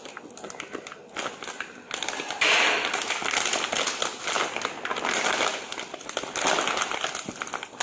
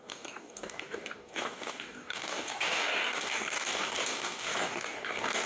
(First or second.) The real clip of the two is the first